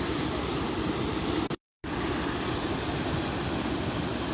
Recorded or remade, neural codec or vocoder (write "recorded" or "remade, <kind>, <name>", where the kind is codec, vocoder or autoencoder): recorded